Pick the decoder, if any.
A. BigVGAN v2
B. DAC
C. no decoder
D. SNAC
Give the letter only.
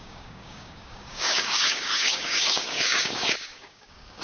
B